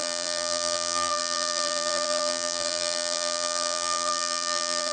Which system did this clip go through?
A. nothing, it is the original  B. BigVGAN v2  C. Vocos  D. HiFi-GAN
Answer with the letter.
B